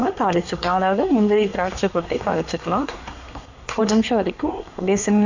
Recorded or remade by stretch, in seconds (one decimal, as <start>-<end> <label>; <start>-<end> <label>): 0.0-5.3 remade